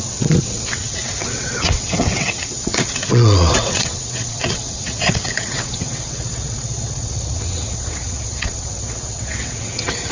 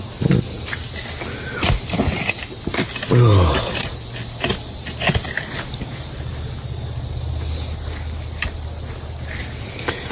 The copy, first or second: first